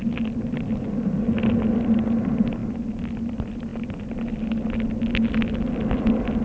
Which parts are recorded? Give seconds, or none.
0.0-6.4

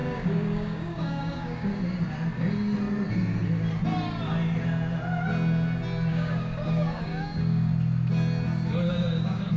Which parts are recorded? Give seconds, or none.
1.7-6.1; 7.7-8.9

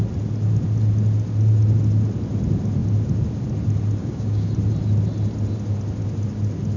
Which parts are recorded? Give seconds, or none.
0.0-4.0; 4.5-6.8